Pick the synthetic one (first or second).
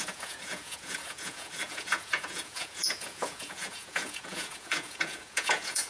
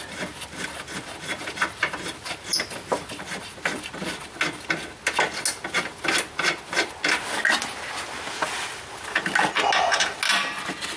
first